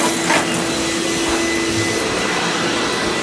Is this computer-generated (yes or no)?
no